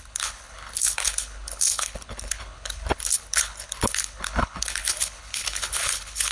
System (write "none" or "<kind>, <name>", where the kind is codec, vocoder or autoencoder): codec, HILCodec